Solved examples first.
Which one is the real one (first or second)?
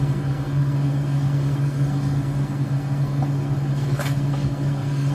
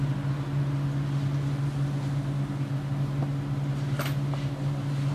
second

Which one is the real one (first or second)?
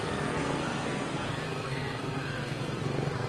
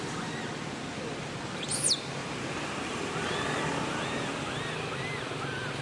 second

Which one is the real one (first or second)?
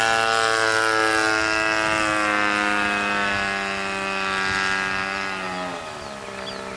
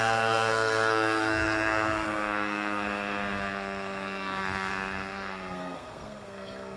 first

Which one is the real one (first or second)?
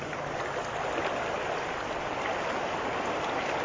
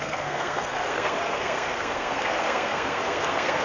first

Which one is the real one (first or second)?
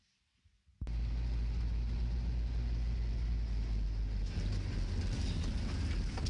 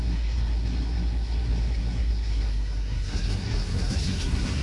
first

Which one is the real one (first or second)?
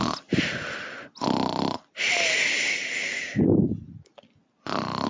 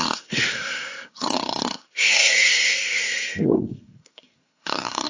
first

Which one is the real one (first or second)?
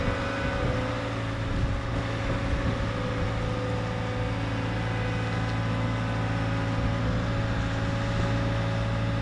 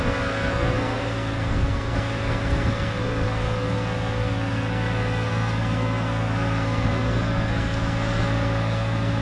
first